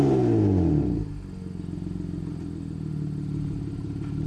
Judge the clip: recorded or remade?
recorded